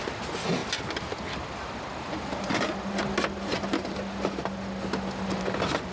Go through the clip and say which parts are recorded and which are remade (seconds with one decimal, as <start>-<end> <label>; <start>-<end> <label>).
0.0-5.9 recorded